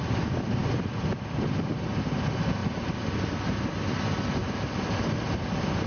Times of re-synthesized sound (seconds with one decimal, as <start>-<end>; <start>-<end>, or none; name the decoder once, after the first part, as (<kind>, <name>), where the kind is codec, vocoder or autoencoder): 2.6-3.3 (vocoder, BigVGAN v2); 4.4-5.1